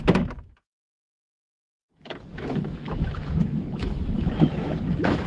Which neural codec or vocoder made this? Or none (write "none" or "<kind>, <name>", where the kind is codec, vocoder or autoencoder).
autoencoder, DAC-VAE